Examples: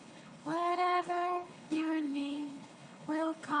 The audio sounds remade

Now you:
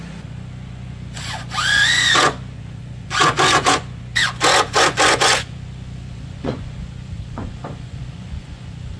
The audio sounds remade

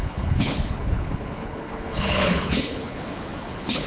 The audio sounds remade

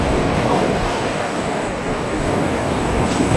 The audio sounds remade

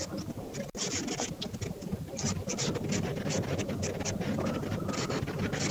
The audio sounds recorded